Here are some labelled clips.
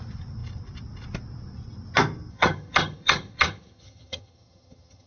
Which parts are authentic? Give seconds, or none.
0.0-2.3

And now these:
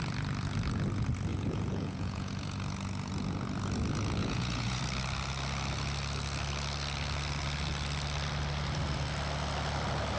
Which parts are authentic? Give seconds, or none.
0.0-1.3; 2.3-4.2; 4.8-10.2

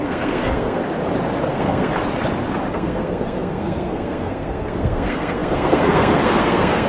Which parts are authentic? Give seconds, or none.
0.8-1.5; 1.9-2.7

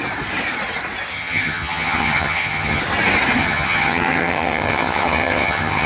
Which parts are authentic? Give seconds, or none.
0.0-1.1; 2.8-3.4

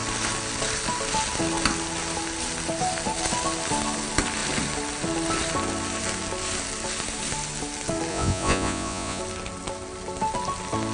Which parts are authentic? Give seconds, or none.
0.0-8.1; 9.2-10.9

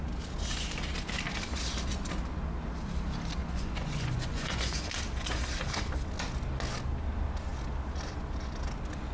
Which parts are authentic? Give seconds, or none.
0.0-3.4; 4.8-9.1

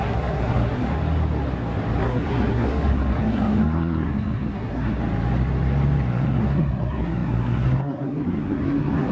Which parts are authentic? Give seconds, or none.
1.0-2.0; 5.0-6.1

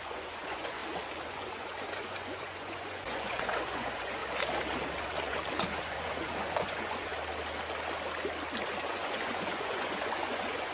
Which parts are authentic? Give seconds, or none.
0.8-1.3; 4.2-5.0; 7.1-8.9